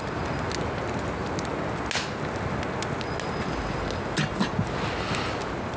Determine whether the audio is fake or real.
real